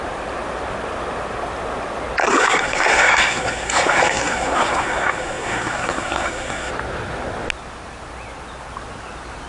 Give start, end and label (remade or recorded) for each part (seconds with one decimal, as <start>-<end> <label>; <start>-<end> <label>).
0.0-2.2 recorded; 2.2-6.7 remade; 6.7-9.5 recorded